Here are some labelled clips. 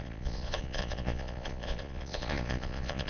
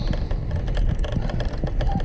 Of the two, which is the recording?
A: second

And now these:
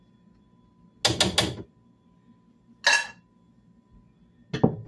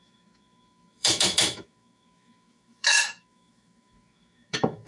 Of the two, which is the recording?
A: first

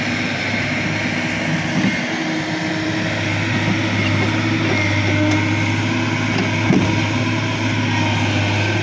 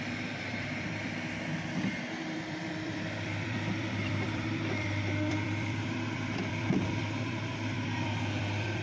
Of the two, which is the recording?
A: first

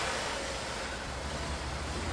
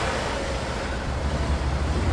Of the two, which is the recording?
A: first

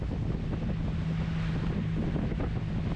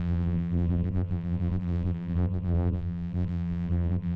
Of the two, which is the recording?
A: first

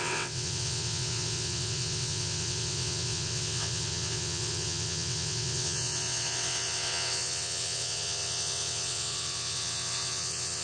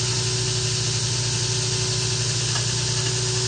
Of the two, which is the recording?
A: second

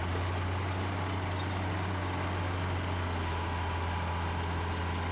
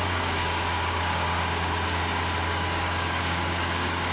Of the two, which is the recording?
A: first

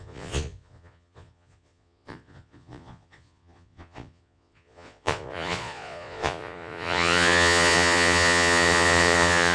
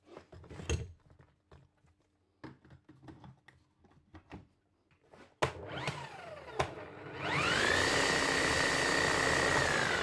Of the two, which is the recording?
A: second